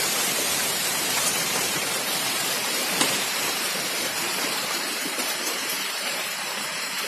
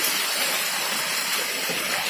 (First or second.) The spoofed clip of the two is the first